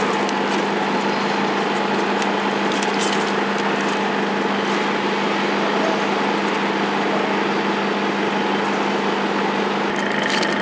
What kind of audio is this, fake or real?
real